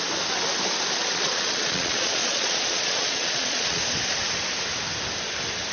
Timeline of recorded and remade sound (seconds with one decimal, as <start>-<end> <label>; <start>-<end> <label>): 0.0-1.0 recorded; 1.0-3.8 remade; 3.8-5.7 recorded